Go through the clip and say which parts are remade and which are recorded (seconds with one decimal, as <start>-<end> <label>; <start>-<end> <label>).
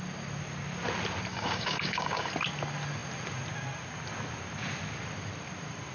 0.0-1.3 recorded; 1.3-2.3 remade; 2.3-5.9 recorded